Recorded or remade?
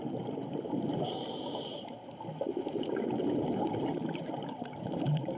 remade